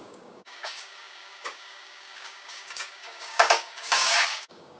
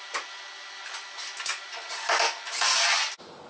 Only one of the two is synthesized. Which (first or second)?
first